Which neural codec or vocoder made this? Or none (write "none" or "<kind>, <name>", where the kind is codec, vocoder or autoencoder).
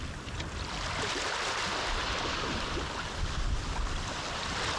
none